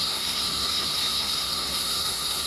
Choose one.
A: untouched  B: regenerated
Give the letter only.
B